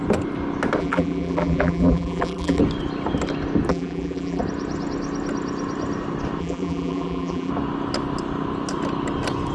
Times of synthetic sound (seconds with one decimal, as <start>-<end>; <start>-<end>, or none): 0.8-2.6; 3.7-4.4; 6.4-7.5